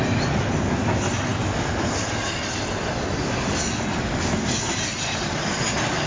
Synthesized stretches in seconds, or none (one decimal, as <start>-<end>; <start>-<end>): none